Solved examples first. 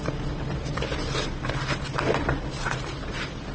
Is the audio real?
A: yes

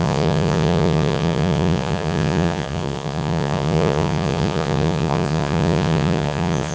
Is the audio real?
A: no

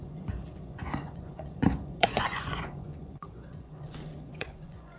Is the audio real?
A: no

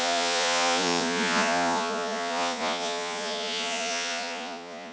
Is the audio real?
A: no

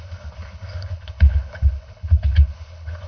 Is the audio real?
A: no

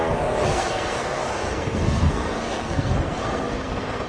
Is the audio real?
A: no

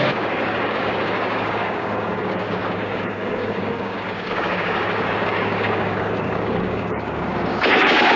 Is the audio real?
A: no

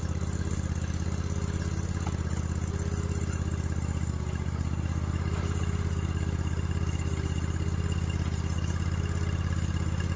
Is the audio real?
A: yes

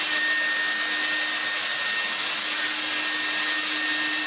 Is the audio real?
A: yes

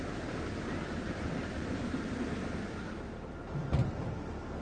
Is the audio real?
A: yes